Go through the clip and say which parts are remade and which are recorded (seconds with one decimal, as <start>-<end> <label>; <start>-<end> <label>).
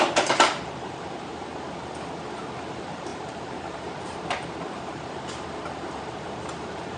0.0-1.5 remade; 1.5-2.6 recorded; 2.6-7.0 remade